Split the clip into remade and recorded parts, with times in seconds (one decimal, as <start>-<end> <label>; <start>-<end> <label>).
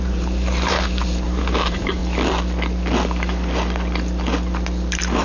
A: 0.0-2.0 remade; 2.0-5.2 recorded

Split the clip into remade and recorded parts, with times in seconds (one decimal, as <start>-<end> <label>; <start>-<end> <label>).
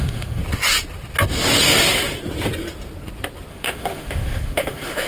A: 0.0-0.4 remade; 0.4-3.5 recorded; 3.5-5.1 remade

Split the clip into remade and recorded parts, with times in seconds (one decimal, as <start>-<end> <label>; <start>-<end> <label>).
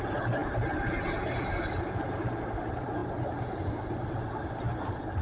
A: 0.0-5.2 recorded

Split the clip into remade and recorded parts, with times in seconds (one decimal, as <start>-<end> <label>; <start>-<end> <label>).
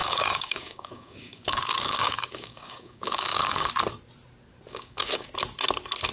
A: 0.0-3.7 remade; 3.7-4.7 recorded; 4.7-5.3 remade; 5.3-6.1 recorded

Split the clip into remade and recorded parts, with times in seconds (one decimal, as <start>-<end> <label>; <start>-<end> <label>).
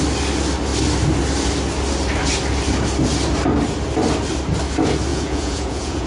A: 0.0-5.1 recorded; 5.1-6.1 remade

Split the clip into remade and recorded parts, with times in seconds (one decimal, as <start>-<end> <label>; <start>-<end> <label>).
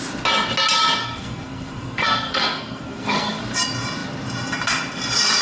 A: 0.0-1.0 recorded; 1.0-3.4 remade; 3.4-5.4 recorded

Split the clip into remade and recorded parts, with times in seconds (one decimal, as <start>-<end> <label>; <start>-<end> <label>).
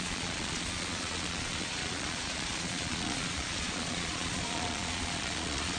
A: 0.0-5.8 remade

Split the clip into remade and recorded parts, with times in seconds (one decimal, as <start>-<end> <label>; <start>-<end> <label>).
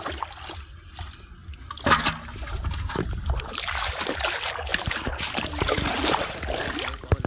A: 0.0-4.7 recorded; 4.7-6.4 remade; 6.4-7.3 recorded